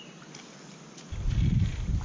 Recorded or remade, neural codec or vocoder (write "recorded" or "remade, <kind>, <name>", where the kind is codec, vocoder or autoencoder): recorded